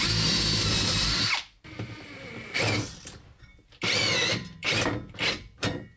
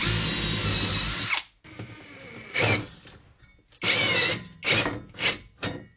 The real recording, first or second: second